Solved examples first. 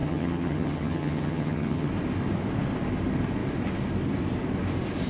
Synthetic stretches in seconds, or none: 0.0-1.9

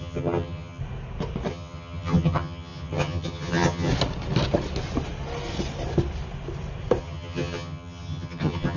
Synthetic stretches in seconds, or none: 0.0-0.8; 1.5-3.9; 7.0-8.8

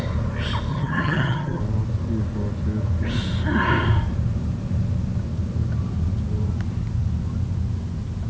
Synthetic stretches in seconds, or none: 0.7-1.6

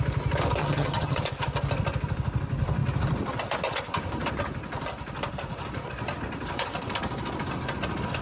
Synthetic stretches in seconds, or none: 0.6-1.2

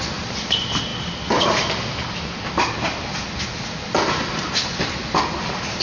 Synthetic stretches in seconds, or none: none

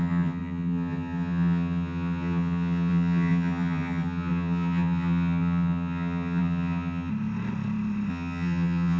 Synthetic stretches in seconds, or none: 0.0-7.1; 8.1-9.0